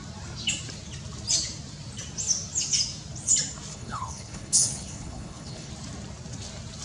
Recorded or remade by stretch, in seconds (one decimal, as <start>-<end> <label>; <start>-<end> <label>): 0.0-3.7 recorded; 3.7-5.7 remade; 5.7-6.8 recorded